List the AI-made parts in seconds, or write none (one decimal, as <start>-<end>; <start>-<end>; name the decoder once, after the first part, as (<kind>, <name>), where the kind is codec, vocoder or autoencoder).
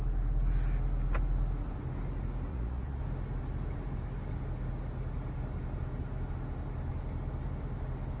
2.5-3.0 (vocoder, Vocos)